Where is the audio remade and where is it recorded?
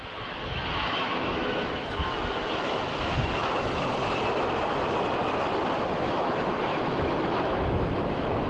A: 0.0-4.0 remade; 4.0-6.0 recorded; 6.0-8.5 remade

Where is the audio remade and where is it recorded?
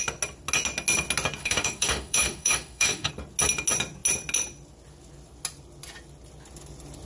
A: 0.0-1.4 recorded; 1.4-3.1 remade; 3.1-7.1 recorded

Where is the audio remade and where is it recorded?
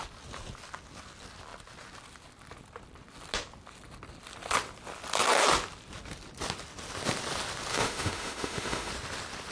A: 0.0-7.7 recorded; 7.7-8.9 remade; 8.9-9.5 recorded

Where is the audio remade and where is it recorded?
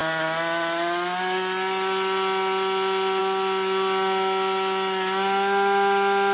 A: 0.0-6.3 recorded